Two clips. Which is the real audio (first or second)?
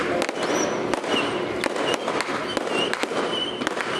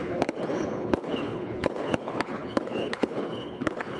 first